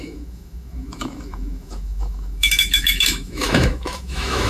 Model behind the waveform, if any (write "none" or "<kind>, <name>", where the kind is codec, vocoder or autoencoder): autoencoder, DAC-VAE